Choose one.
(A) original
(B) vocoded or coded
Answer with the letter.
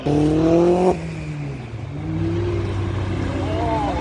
A